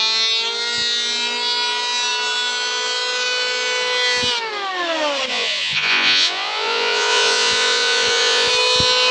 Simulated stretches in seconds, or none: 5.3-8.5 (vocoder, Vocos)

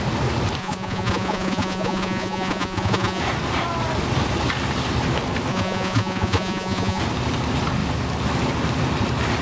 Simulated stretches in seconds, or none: 0.6-3.2 (vocoder, Vocos); 5.5-7.0